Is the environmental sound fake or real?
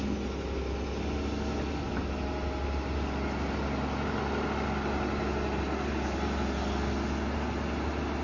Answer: real